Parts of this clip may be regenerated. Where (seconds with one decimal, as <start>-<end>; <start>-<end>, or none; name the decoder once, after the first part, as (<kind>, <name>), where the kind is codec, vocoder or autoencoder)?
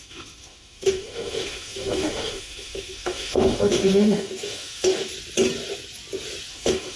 0.0-5.1 (autoencoder, DAC-VAE); 6.5-7.0